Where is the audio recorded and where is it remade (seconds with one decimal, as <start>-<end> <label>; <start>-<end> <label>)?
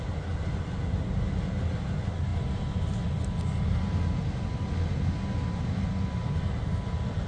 0.0-7.3 recorded